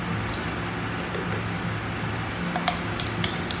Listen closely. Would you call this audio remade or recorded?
recorded